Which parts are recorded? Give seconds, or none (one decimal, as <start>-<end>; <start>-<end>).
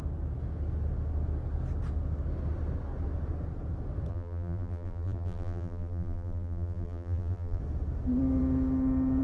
0.0-4.1; 7.6-9.2